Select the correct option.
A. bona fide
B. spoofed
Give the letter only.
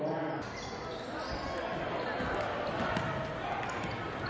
A